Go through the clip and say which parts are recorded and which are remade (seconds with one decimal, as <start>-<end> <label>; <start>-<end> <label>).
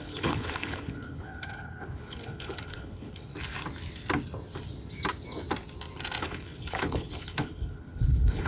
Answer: 0.0-3.3 remade; 3.3-6.2 recorded; 6.2-8.5 remade